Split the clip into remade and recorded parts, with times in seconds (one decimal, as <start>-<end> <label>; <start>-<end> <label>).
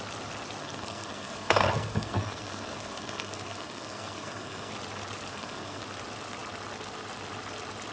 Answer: 0.0-0.6 recorded; 0.6-4.7 remade; 4.7-5.3 recorded; 5.3-5.8 remade; 5.8-7.9 recorded